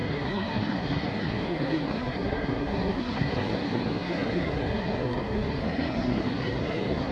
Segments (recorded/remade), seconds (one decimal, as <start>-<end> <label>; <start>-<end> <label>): 0.0-7.1 remade